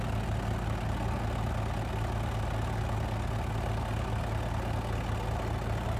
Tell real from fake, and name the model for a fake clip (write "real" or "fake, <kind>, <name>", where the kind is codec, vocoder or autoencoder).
real